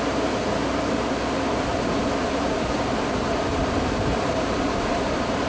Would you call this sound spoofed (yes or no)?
yes